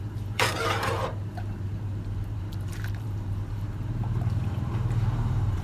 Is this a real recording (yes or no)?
no